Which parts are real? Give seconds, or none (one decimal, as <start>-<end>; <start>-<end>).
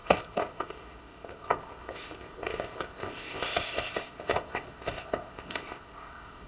none